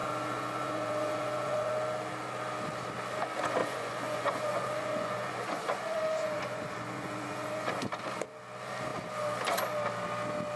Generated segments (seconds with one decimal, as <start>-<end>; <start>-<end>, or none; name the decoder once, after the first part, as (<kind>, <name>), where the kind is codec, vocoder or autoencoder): 0.0-1.7 (vocoder, Vocos); 3.6-8.0